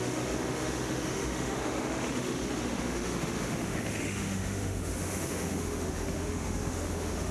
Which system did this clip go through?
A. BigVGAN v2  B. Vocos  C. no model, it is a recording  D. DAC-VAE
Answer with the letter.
D